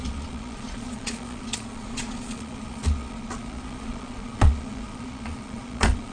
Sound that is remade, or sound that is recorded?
remade